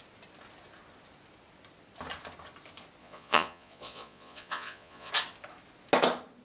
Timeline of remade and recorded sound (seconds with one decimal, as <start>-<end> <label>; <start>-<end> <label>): 0.0-3.0 recorded; 3.0-5.1 remade; 5.1-6.4 recorded